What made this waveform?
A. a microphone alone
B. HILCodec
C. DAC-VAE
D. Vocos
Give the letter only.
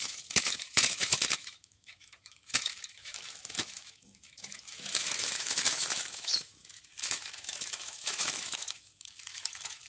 C